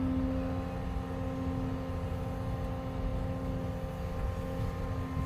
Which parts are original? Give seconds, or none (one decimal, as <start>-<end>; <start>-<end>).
0.0-5.3